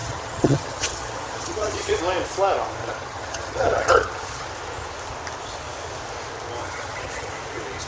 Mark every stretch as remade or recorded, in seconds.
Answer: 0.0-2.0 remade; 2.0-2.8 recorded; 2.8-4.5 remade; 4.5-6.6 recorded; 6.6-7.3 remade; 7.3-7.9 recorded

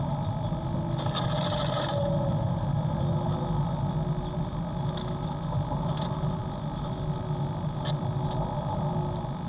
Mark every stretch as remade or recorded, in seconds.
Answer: 0.0-9.5 recorded

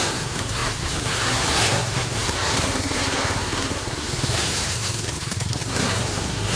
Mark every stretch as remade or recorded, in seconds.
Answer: 0.0-6.6 remade

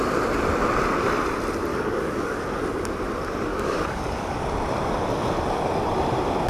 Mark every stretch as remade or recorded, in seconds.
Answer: 0.0-1.7 recorded; 1.7-2.4 remade; 2.4-3.5 recorded; 3.5-4.4 remade; 4.4-6.5 recorded

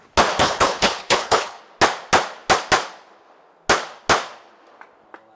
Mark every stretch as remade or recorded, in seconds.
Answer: 0.0-0.4 recorded; 0.4-1.6 remade; 1.6-5.4 recorded